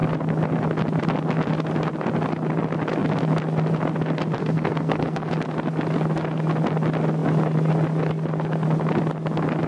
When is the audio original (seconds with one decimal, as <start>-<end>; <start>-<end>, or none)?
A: 0.0-4.4; 5.3-9.7